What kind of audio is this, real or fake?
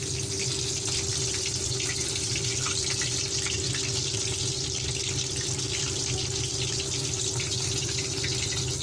real